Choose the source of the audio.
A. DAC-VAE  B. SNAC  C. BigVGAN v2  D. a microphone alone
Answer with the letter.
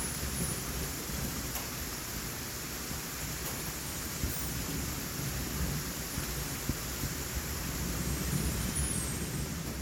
C